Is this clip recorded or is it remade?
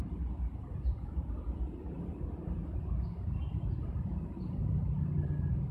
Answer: recorded